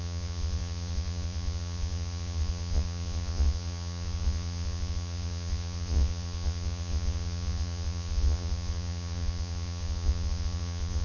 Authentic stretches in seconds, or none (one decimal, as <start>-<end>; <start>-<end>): none